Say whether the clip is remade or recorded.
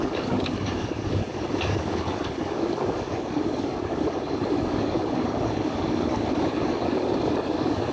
remade